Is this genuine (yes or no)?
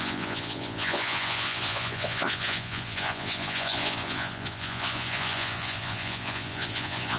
no